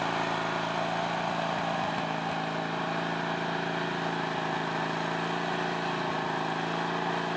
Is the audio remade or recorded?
recorded